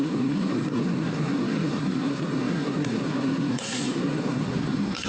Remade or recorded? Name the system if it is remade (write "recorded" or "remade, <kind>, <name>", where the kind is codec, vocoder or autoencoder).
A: remade, codec, SNAC